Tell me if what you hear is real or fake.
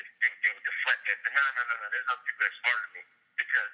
real